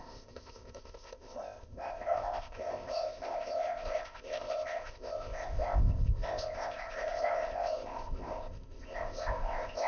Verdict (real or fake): fake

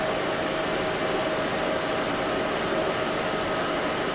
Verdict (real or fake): real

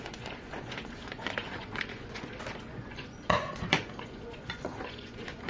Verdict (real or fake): fake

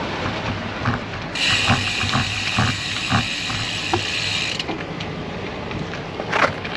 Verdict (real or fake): fake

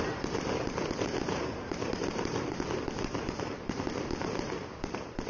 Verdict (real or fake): fake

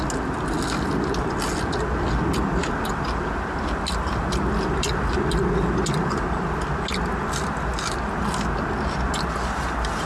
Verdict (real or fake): real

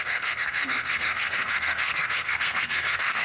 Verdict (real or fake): fake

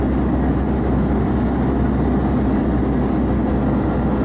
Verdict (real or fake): real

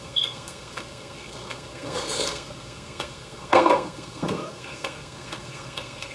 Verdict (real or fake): fake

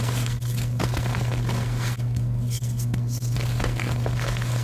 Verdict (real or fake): fake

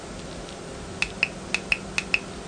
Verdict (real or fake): real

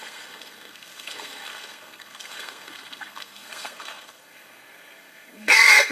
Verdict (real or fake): fake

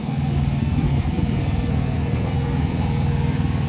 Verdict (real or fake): fake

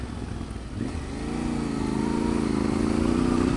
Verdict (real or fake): real